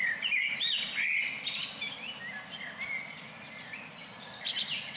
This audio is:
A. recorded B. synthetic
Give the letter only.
A